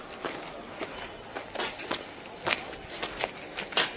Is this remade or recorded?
recorded